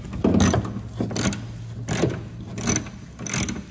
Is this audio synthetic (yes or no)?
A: no